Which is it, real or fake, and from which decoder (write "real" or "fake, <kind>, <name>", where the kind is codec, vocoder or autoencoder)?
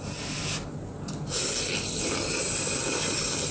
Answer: real